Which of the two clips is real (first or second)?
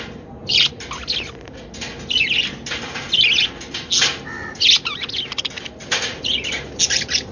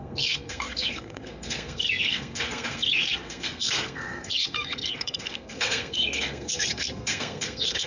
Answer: first